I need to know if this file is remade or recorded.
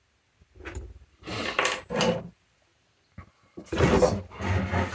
recorded